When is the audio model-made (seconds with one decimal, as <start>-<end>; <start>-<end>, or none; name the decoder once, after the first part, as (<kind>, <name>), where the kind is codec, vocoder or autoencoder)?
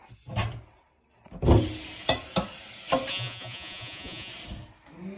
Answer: 3.1-4.3 (vocoder, Vocos)